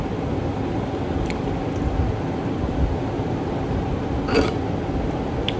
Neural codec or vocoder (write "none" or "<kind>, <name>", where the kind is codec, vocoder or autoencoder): none